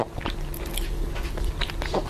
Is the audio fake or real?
real